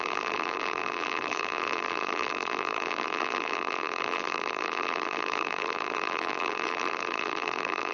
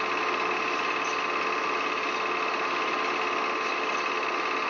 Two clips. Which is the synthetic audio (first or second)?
first